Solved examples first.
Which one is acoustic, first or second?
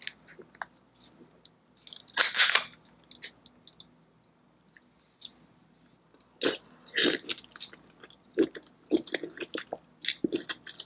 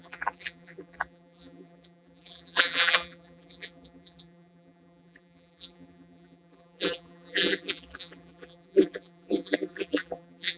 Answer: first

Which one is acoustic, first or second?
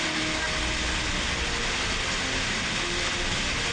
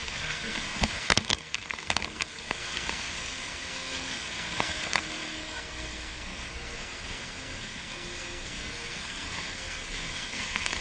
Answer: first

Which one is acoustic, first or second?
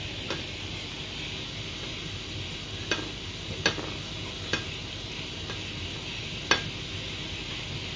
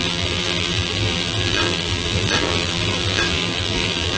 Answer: first